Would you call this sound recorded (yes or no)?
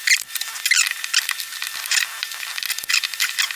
yes